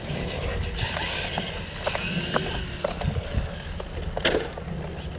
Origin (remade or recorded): recorded